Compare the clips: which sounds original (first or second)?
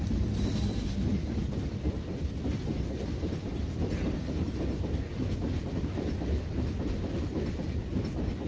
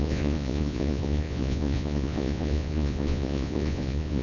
first